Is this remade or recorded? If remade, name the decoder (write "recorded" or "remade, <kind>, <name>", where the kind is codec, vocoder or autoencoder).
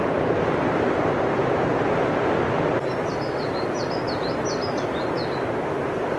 recorded